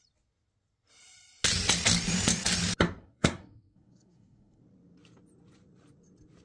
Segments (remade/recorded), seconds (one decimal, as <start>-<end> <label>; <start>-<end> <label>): 0.0-3.0 recorded; 3.0-4.6 remade; 4.6-6.4 recorded